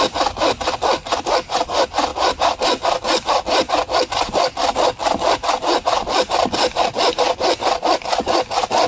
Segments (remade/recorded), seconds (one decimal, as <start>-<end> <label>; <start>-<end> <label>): 0.0-2.1 remade; 2.1-3.7 recorded; 3.7-8.9 remade